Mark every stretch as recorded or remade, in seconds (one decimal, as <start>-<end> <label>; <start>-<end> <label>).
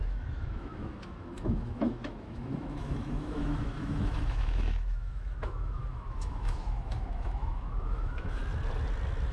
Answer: 0.0-8.4 remade; 8.4-9.3 recorded